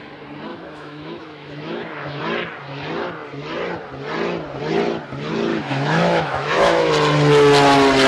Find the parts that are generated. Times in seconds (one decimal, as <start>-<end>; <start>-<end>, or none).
0.5-2.2; 5.5-6.9